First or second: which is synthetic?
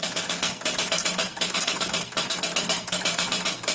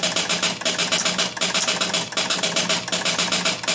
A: first